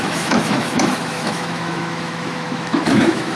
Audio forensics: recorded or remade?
remade